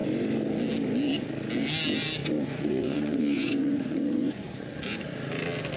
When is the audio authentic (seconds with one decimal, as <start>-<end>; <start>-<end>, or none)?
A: 0.0-2.2; 5.0-5.8